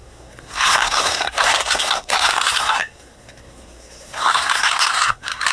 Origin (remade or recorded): remade